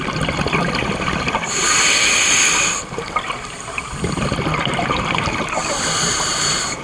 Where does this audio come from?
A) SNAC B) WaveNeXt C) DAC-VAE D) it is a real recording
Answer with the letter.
D